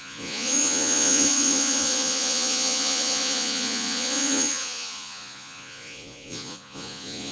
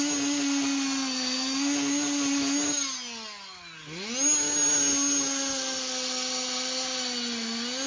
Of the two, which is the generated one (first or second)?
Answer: first